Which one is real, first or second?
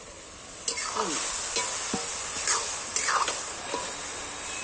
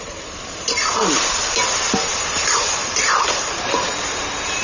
first